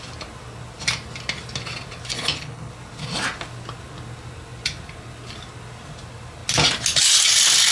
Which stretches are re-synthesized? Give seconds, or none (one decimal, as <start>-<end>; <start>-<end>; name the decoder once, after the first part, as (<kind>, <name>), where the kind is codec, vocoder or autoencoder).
2.1-2.7 (codec, HILCodec)